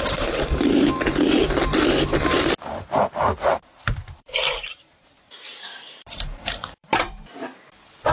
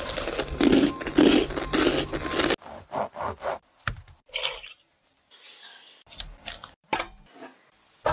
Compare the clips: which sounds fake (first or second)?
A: first